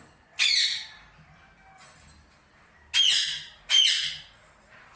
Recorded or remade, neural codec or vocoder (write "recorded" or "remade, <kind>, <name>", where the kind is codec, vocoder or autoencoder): recorded